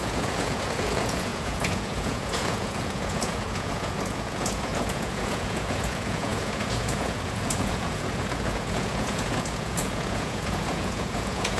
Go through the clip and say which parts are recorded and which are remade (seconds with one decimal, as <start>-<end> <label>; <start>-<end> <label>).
0.0-11.6 remade

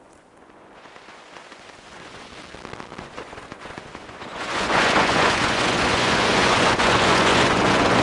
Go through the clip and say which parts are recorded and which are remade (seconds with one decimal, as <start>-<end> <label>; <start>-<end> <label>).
0.0-2.3 remade; 2.3-3.0 recorded; 3.0-8.0 remade